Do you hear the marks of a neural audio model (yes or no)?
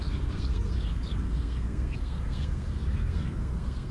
yes